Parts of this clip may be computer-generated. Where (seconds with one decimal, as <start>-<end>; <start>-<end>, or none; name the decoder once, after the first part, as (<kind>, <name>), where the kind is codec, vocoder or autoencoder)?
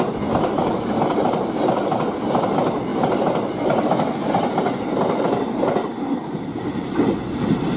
none